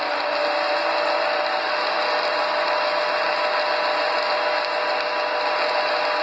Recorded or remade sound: recorded